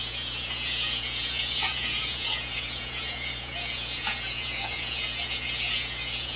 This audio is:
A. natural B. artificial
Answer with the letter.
B